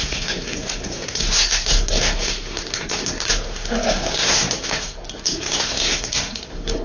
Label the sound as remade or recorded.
remade